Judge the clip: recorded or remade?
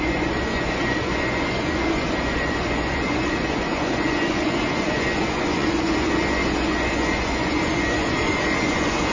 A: remade